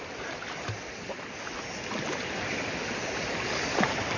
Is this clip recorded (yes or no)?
yes